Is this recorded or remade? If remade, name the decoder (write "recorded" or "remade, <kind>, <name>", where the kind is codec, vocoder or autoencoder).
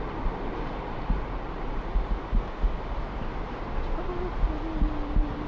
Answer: recorded